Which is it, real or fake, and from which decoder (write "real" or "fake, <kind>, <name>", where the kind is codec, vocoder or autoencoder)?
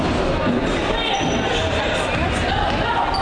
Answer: real